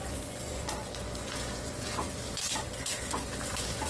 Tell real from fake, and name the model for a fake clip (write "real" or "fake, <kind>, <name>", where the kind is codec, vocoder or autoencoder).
fake, vocoder, Vocos